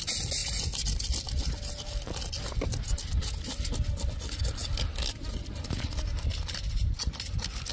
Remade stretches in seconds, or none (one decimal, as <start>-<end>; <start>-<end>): none